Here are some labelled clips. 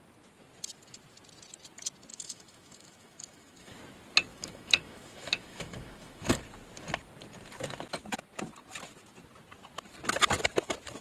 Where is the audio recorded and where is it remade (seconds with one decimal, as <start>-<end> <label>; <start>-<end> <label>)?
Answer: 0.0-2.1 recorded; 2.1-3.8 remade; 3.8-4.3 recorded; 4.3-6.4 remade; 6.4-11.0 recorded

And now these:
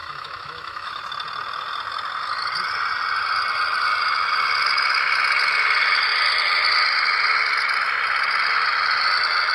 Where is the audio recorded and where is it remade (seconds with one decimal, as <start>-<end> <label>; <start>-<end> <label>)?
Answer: 0.0-1.0 remade; 1.0-9.5 recorded

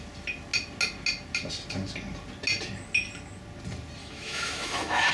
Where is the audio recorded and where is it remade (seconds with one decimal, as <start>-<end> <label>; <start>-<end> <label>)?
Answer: 0.0-4.0 recorded; 4.0-5.1 remade

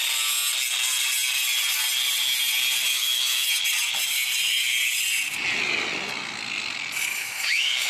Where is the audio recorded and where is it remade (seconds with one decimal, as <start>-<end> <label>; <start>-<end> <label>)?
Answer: 0.0-2.9 recorded; 2.9-3.5 remade; 3.5-7.1 recorded; 7.1-7.9 remade